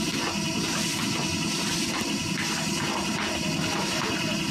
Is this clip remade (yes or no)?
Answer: no